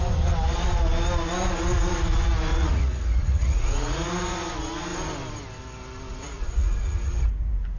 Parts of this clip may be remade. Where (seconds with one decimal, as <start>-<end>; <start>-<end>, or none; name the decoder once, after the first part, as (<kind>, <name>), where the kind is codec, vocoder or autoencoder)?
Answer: 2.5-4.1 (vocoder, Vocos); 6.1-7.1